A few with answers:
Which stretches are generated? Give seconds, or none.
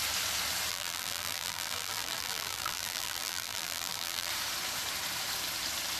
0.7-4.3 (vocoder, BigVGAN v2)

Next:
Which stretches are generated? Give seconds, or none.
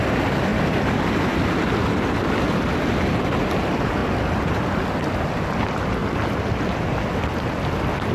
none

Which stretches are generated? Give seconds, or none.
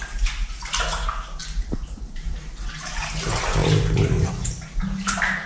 1.4-3.2 (vocoder, BigVGAN v2)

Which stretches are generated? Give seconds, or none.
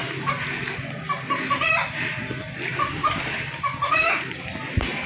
2.7-4.4 (vocoder, BigVGAN v2)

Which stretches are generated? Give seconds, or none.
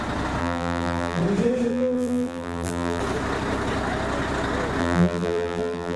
0.4-1.2 (vocoder, BigVGAN v2); 1.7-3.0; 4.8-6.0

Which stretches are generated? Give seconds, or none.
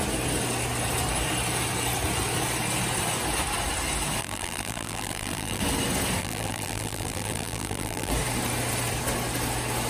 4.2-5.6 (vocoder, BigVGAN v2); 6.2-8.1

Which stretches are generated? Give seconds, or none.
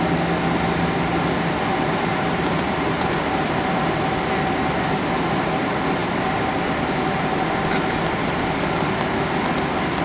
1.7-3.9 (vocoder, BigVGAN v2)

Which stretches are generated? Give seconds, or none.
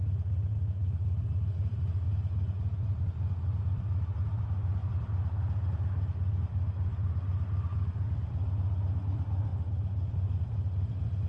0.0-9.5 (vocoder, BigVGAN v2); 10.1-11.3